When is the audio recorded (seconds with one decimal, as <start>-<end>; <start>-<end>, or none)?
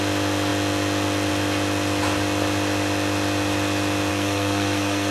0.0-4.1